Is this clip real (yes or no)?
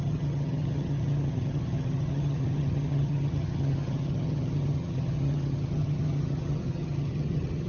no